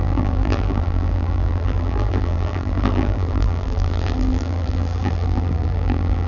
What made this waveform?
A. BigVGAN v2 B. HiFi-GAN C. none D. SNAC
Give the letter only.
A